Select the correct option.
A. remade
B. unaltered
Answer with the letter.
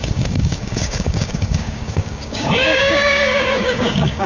A